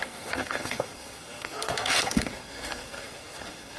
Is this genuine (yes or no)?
no